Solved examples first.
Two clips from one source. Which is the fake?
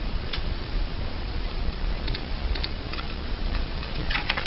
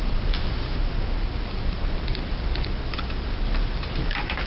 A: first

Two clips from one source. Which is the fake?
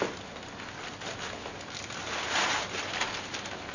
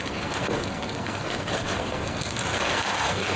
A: second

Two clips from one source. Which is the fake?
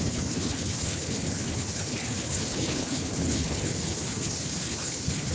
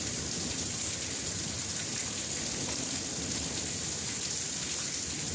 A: first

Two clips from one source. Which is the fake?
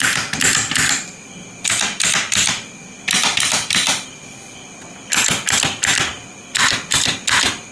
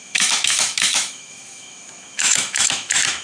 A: second